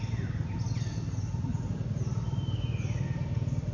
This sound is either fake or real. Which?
real